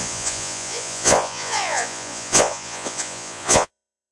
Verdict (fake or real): fake